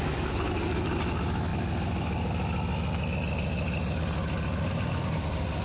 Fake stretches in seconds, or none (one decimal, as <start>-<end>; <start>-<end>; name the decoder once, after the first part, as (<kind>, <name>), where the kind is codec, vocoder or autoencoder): none